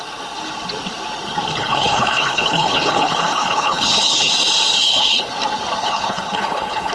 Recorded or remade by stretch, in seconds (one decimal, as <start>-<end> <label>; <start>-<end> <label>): 0.0-1.6 recorded; 1.6-4.3 remade; 4.3-4.8 recorded; 4.8-5.3 remade; 5.3-5.8 recorded; 5.8-6.9 remade